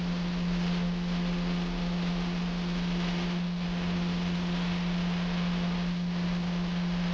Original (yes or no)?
yes